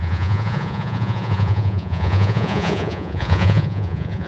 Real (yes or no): no